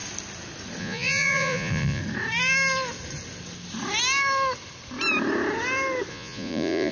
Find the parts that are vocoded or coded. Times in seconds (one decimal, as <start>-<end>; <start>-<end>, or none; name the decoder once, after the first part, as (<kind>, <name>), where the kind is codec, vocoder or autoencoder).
0.8-2.0 (vocoder, Vocos); 6.1-6.9